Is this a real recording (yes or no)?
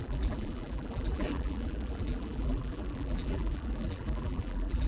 no